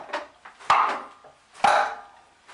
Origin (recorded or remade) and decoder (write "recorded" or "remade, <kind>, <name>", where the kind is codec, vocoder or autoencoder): recorded